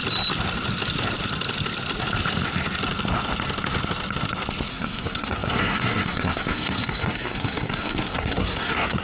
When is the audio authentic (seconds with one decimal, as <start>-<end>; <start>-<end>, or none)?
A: 0.0-4.7